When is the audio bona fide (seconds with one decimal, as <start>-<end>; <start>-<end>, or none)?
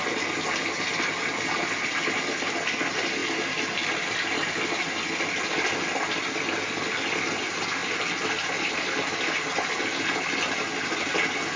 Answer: 0.0-11.6